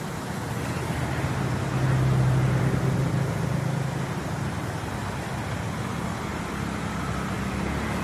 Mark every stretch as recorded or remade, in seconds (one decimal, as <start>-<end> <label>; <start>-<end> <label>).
0.0-6.3 recorded; 6.3-7.0 remade; 7.0-8.0 recorded